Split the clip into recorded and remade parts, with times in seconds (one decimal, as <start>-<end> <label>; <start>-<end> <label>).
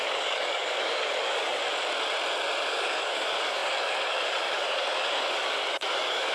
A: 0.0-1.6 remade; 1.6-2.6 recorded; 2.6-6.3 remade